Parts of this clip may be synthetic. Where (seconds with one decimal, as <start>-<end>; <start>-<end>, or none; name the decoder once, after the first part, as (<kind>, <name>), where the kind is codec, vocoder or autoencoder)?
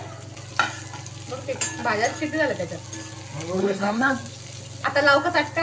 3.6-4.1 (codec, SNAC)